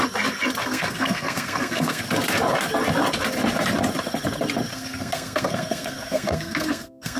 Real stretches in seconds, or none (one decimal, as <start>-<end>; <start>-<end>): 0.0-0.6; 2.0-4.7